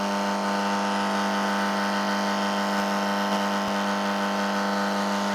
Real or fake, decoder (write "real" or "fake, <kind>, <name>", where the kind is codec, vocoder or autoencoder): real